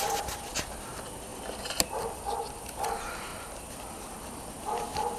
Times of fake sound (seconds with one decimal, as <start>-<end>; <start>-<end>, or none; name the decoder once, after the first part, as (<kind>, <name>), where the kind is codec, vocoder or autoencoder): none